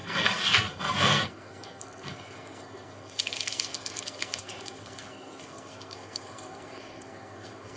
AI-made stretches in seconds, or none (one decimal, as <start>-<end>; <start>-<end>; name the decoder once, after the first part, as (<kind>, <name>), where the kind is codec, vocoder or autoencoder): 0.0-7.8 (codec, SNAC)